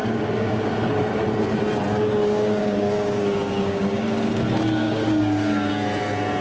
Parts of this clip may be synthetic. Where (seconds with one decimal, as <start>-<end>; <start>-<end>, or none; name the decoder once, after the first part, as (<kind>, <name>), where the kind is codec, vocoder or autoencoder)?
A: 0.0-0.7 (codec, DAC); 1.9-4.3; 4.8-5.7